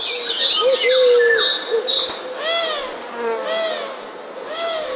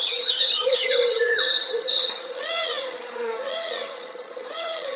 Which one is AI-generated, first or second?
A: second